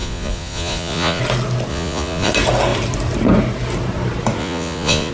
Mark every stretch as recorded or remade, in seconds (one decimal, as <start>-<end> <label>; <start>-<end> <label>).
0.0-1.2 remade; 1.2-1.7 recorded; 1.7-2.3 remade; 2.3-4.4 recorded; 4.4-5.1 remade

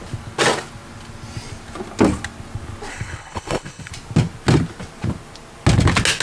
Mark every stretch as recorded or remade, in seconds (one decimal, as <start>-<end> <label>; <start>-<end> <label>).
0.0-2.9 recorded; 2.9-3.9 remade; 3.9-6.2 recorded

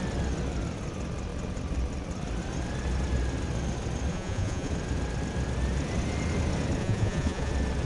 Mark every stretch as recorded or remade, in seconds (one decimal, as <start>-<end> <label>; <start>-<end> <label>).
0.0-4.1 recorded; 4.1-4.7 remade; 4.7-6.8 recorded; 6.8-7.5 remade; 7.5-7.9 recorded